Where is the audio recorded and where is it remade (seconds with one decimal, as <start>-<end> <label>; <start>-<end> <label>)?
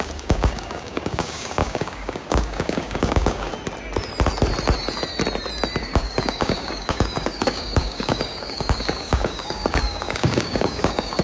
0.0-3.5 remade; 3.5-5.8 recorded; 5.8-11.2 remade